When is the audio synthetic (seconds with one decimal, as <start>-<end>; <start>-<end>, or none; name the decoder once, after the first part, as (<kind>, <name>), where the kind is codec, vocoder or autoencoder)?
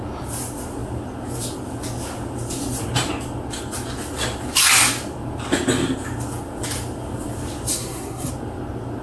7.7-8.3 (codec, SNAC)